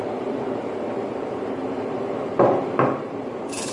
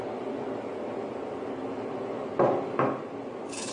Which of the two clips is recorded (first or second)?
second